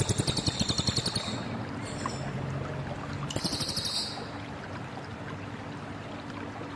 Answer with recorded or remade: recorded